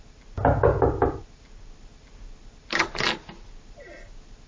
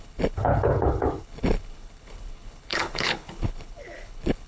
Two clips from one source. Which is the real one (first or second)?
first